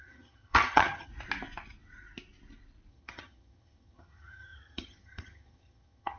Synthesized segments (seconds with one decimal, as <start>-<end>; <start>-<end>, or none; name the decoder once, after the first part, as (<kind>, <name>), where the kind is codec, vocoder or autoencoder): 0.0-1.1 (vocoder, HiFi-GAN); 2.9-6.2